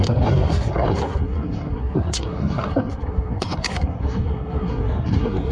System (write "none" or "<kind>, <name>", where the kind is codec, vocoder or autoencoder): codec, SNAC